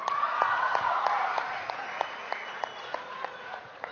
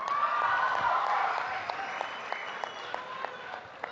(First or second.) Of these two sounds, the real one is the second